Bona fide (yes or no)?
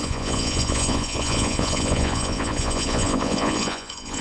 no